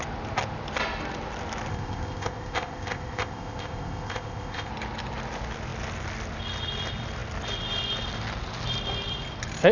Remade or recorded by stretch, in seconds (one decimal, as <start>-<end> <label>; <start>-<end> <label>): 0.0-1.7 recorded; 1.7-4.7 remade; 4.7-9.7 recorded